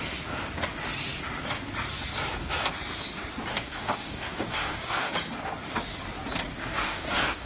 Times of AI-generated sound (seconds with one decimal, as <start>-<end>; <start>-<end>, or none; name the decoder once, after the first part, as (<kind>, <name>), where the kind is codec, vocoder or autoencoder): 3.5-5.1 (codec, DAC); 6.6-7.5